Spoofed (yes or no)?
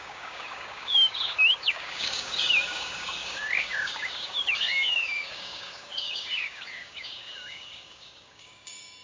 yes